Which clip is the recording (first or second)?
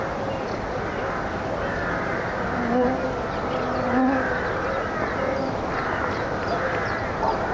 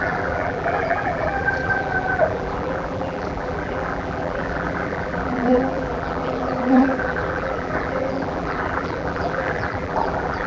first